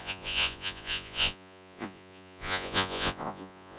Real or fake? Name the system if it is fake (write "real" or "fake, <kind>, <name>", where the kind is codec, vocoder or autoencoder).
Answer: fake, vocoder, Vocos